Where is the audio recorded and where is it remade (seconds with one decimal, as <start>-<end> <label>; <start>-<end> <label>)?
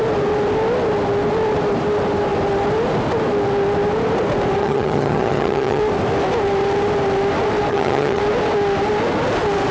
0.0-4.6 recorded; 4.6-5.8 remade; 5.8-7.7 recorded; 7.7-8.2 remade; 8.2-9.7 recorded